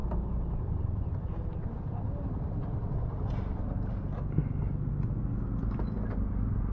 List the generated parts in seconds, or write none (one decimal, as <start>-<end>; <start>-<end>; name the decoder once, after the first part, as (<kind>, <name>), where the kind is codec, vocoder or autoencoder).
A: none